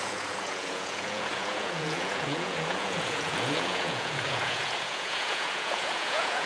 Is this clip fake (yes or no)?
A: yes